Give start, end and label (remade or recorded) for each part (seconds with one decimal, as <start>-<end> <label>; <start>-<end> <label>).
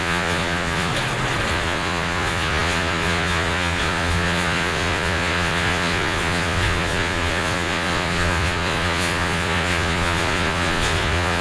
0.0-0.9 remade; 0.9-1.5 recorded; 1.5-11.4 remade